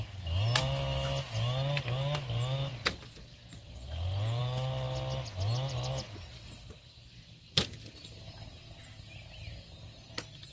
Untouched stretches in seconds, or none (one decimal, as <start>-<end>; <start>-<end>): 0.0-10.5